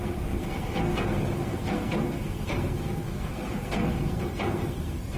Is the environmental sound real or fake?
fake